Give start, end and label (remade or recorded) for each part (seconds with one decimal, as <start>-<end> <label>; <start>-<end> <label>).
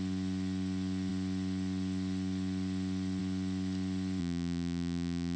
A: 0.0-4.2 recorded; 4.2-5.4 remade